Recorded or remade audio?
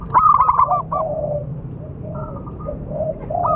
remade